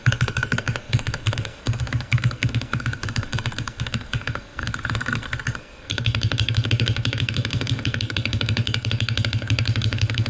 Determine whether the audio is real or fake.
fake